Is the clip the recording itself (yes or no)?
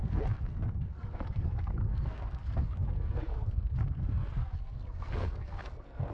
no